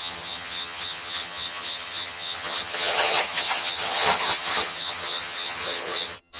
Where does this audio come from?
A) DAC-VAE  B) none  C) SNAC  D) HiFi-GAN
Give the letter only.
D